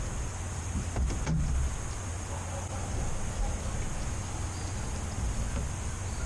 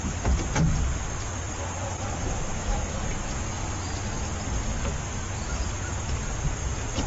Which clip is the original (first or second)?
first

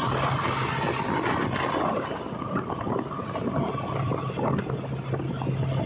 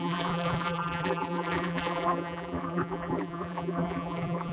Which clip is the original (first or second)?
first